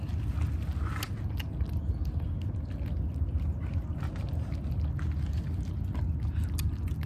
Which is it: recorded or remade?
recorded